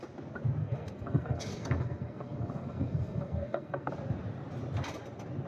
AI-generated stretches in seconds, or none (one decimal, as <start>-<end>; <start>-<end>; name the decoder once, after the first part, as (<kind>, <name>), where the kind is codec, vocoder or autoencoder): 0.6-3.9 (codec, SNAC)